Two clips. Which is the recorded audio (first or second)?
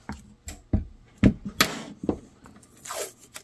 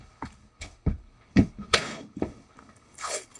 first